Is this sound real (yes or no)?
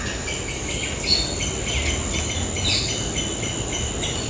yes